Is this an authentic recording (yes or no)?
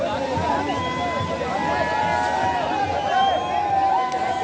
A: yes